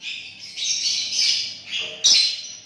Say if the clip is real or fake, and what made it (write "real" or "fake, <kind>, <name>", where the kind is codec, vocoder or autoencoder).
real